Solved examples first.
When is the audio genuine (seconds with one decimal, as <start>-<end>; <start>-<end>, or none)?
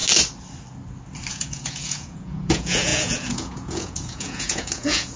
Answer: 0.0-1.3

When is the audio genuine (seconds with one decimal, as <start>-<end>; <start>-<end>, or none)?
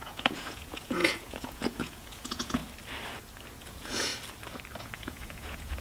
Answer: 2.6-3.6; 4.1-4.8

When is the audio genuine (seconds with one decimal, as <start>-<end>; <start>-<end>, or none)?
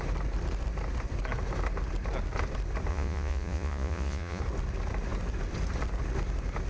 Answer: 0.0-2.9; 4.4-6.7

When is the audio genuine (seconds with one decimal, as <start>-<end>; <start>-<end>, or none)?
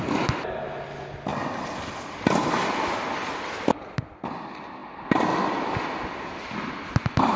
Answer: 4.8-6.7